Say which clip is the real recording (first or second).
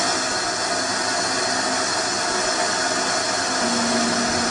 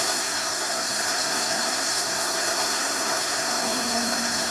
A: first